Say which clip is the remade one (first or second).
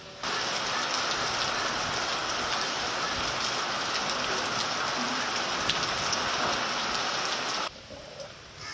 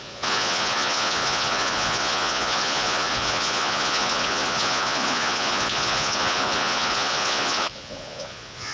second